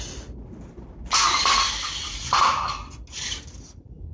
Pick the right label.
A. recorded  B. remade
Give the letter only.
A